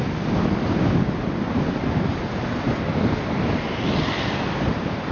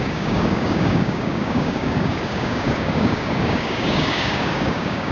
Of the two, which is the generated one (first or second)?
second